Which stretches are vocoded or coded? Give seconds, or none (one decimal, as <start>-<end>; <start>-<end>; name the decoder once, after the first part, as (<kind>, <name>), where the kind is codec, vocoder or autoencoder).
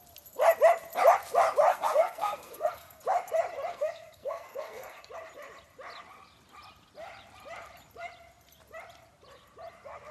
1.7-3.0 (codec, SNAC); 3.7-5.1